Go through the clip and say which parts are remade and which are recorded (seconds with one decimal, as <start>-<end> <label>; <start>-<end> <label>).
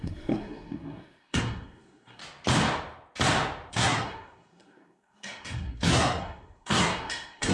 0.0-2.2 remade; 2.2-3.7 recorded; 3.7-7.5 remade